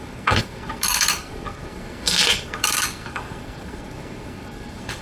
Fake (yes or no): yes